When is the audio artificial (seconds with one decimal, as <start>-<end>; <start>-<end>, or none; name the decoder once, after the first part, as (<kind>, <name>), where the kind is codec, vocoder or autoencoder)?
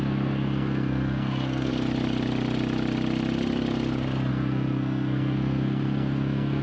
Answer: 0.0-1.7 (codec, SNAC); 4.3-6.6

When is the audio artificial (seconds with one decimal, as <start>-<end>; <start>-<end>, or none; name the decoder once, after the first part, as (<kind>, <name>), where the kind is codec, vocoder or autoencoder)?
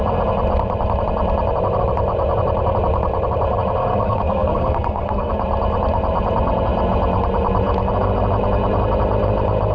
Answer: 3.9-5.3 (codec, SNAC)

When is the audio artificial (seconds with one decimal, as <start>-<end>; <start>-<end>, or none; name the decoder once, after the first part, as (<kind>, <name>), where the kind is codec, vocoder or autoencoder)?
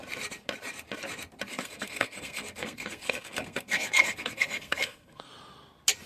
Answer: 1.5-5.3 (codec, SNAC)